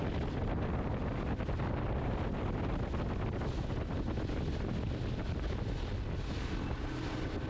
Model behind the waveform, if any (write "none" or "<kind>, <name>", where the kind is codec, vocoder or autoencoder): none